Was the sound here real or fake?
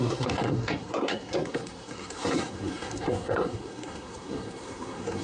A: fake